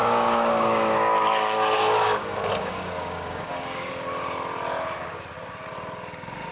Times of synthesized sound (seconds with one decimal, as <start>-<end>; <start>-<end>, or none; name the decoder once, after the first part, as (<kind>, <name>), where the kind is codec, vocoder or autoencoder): 0.0-3.9 (codec, DAC)